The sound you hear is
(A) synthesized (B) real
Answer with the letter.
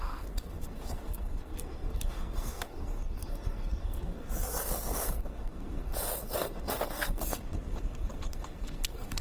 A